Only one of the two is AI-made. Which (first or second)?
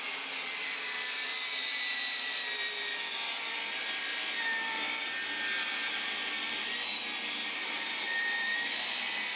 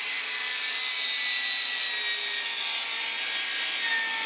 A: first